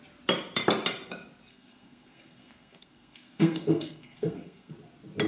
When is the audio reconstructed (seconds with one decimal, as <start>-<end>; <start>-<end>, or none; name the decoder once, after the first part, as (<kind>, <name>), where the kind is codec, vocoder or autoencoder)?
1.5-4.7 (codec, SNAC)